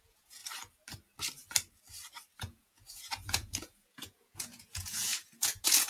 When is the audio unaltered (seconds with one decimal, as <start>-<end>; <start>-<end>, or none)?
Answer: 0.4-2.4